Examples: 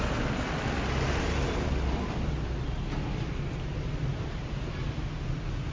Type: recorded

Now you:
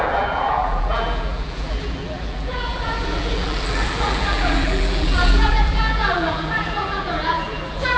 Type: remade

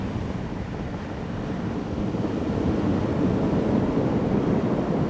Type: remade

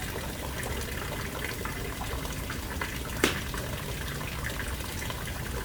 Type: recorded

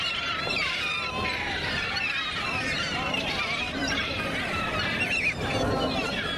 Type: remade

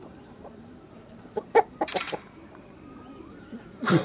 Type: remade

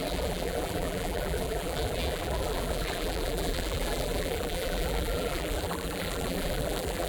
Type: remade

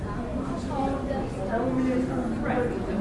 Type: recorded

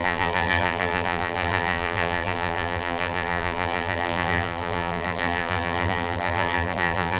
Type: remade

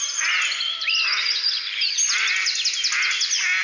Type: recorded